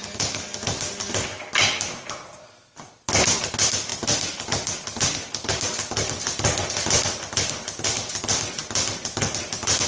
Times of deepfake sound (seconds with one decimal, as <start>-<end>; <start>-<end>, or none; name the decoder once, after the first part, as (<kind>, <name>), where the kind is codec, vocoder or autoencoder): none